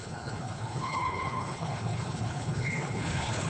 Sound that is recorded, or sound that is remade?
remade